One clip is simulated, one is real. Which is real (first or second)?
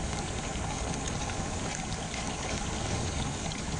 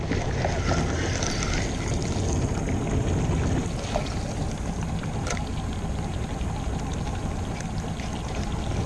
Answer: second